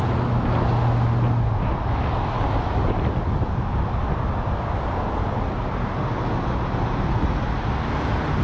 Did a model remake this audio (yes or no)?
no